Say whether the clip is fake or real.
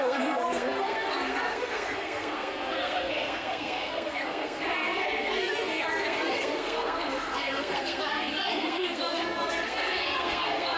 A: fake